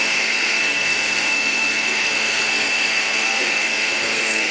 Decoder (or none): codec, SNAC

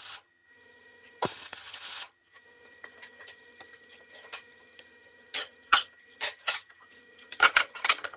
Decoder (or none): vocoder, HiFi-GAN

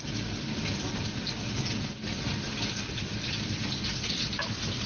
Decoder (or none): none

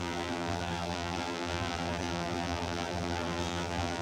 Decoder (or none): vocoder, BigVGAN v2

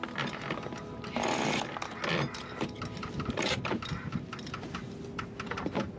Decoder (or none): none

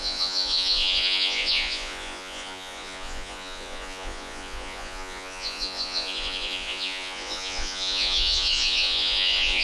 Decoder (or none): vocoder, Vocos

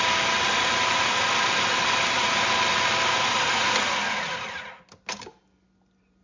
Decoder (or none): none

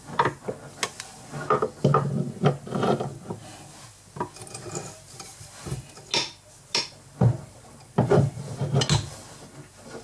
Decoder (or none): none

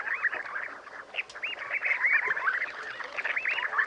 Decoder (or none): none